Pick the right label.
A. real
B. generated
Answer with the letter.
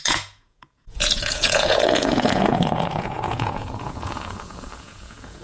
B